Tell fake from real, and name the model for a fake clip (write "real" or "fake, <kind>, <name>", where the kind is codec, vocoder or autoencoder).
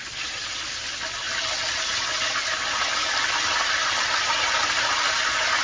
real